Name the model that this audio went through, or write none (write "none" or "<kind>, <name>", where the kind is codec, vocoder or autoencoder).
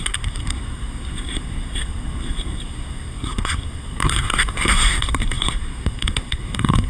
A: codec, SNAC